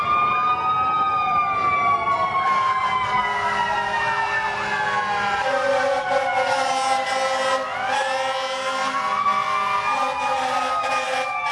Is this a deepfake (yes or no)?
no